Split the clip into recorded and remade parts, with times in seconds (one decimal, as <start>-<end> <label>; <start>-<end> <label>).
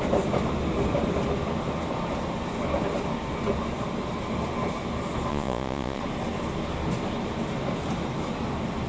0.0-5.3 recorded; 5.3-6.0 remade; 6.0-8.9 recorded